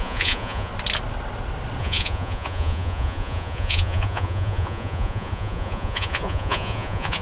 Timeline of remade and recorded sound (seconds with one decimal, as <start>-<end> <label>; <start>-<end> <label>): 0.0-0.7 remade; 0.7-1.8 recorded; 1.8-7.2 remade